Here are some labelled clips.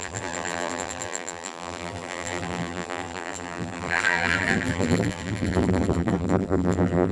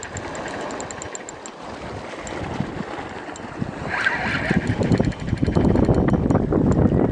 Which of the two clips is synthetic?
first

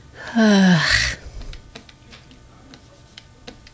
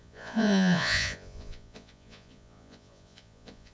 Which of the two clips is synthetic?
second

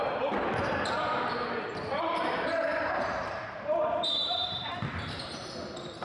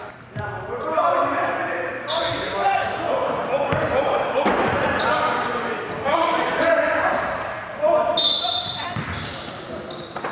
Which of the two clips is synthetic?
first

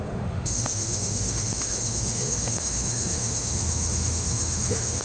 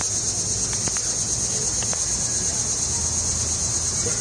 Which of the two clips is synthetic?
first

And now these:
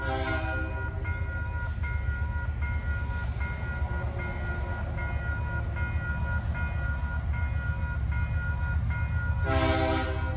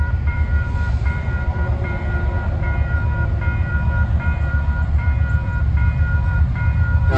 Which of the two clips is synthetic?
second